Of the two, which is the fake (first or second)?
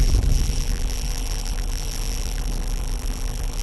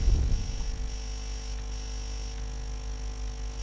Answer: first